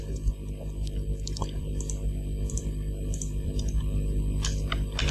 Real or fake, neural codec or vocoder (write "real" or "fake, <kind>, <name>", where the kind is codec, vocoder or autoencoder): fake, vocoder, BigVGAN v2